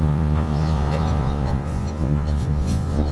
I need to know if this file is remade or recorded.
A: remade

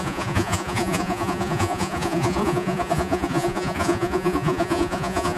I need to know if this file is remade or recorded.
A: remade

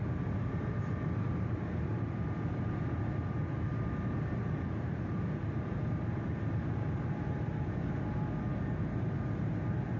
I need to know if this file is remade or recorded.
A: recorded